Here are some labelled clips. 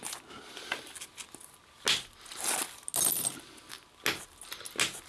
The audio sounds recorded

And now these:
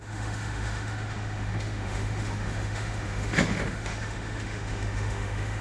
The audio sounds remade